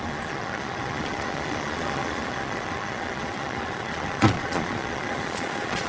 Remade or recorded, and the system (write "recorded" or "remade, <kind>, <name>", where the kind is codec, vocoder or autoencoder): remade, vocoder, Vocos